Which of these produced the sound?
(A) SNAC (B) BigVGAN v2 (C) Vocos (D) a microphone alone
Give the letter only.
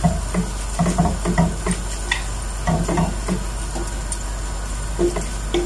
D